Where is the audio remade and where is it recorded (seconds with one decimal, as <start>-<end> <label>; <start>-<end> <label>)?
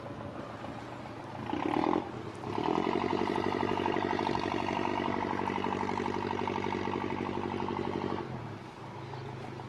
0.0-3.1 recorded; 3.1-4.2 remade; 4.2-9.7 recorded